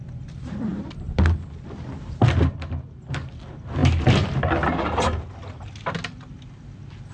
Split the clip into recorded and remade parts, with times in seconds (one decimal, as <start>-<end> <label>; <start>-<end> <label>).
0.0-7.1 recorded